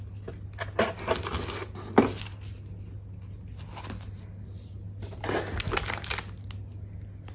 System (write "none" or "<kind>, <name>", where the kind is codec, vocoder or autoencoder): none